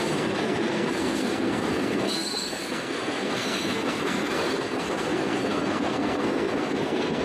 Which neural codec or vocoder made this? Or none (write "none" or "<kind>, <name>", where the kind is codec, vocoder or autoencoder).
codec, SNAC